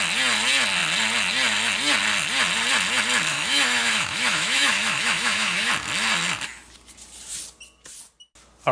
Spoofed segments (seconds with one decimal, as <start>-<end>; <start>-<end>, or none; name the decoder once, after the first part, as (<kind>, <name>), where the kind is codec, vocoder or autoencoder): 3.3-5.7 (autoencoder, DAC-VAE)